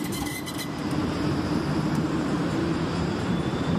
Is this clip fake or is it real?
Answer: fake